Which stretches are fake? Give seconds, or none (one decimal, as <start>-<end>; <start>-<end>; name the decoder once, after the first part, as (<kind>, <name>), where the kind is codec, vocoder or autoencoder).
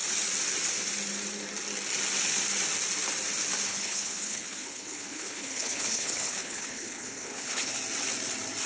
3.7-7.7 (codec, HILCodec)